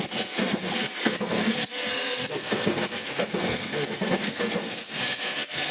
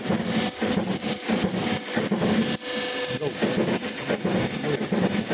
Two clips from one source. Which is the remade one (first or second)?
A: first